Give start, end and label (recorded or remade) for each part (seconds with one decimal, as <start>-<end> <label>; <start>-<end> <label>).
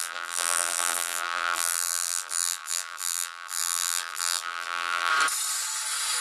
0.0-5.1 remade; 5.1-6.2 recorded